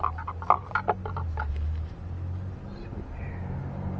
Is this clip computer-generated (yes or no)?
no